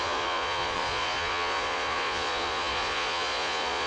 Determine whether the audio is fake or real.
fake